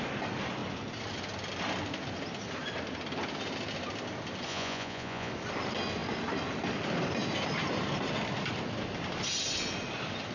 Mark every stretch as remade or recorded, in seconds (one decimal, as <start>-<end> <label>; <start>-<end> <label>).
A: 0.0-4.5 recorded; 4.5-5.3 remade; 5.3-10.3 recorded